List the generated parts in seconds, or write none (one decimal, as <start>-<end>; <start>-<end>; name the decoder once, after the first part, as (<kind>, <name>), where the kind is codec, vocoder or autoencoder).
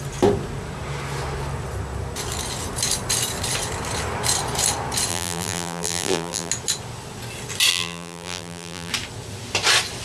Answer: 5.1-6.5 (vocoder, BigVGAN v2); 7.7-8.9